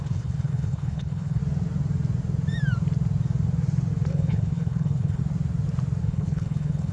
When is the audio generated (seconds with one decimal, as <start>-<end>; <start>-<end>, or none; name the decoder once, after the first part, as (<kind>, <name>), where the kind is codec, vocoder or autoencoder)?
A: 0.0-1.4 (codec, HILCodec); 4.1-5.2; 6.0-6.9